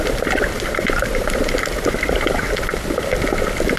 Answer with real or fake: fake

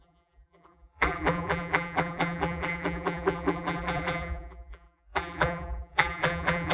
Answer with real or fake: fake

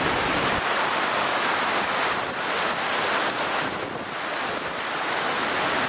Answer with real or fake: real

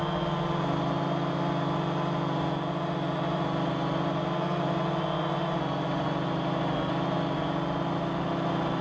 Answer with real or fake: real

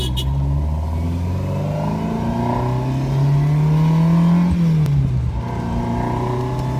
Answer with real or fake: real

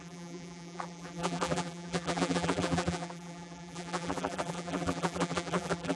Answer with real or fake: fake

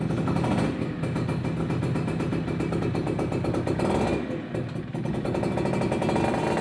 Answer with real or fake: real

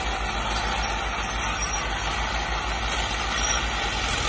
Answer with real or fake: real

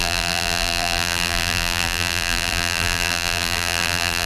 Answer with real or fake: fake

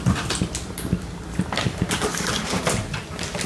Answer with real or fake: real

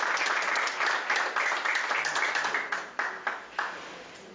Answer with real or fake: real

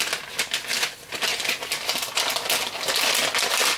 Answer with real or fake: real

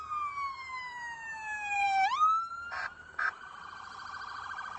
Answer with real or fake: fake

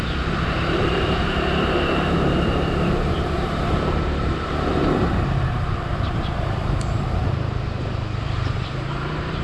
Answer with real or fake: fake